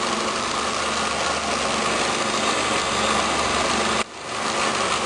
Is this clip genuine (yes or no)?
yes